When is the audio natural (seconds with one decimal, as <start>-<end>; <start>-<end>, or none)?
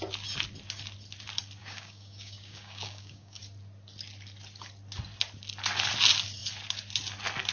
0.0-1.6; 3.4-7.5